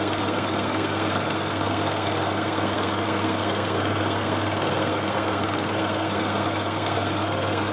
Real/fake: fake